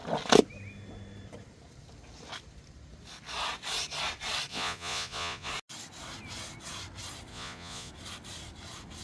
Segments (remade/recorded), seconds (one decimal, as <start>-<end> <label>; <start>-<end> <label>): 0.0-4.5 recorded; 4.5-5.5 remade; 5.5-7.3 recorded; 7.3-7.9 remade; 7.9-9.0 recorded